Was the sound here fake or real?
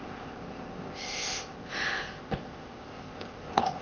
fake